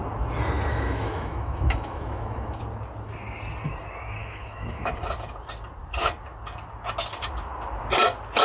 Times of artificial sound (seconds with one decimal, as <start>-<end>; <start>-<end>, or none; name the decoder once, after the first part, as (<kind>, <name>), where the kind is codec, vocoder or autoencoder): 0.7-2.6 (autoencoder, DAC-VAE); 4.2-4.9